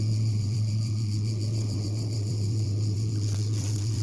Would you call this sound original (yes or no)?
no